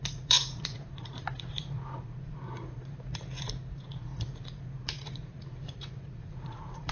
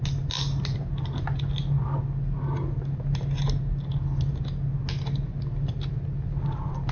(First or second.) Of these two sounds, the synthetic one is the first